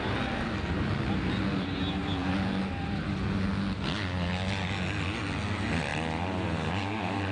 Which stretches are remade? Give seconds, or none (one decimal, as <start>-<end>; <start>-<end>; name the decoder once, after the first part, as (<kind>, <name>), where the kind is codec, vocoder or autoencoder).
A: none